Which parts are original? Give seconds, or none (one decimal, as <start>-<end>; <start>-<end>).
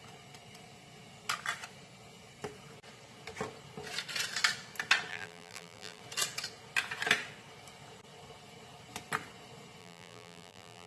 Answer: 0.0-5.1; 6.0-9.8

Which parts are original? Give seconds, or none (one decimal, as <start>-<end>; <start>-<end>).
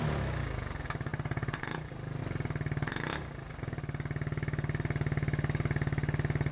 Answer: 0.0-1.1; 2.2-6.5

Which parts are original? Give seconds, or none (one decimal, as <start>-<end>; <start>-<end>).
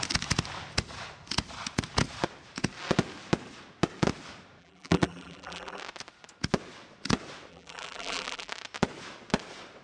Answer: 0.0-4.6; 5.8-7.5; 8.5-9.8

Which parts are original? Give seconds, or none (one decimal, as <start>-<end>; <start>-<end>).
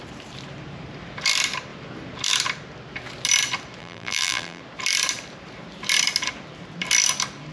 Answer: 0.0-3.8; 4.6-7.5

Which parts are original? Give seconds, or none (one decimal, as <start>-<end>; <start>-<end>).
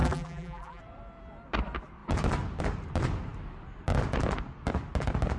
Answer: 0.8-5.4